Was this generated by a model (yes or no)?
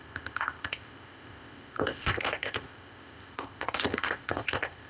yes